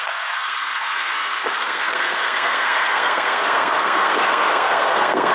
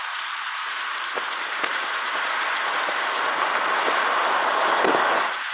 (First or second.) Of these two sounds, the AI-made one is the first